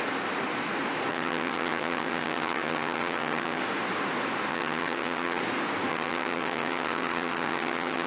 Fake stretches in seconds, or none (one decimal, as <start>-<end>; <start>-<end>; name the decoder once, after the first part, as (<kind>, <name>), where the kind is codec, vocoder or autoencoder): 1.1-3.6 (vocoder, HiFi-GAN); 4.5-5.4; 5.9-8.1